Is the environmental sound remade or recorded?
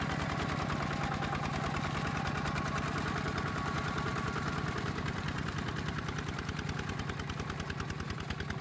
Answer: recorded